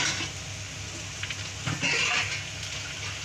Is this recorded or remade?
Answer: recorded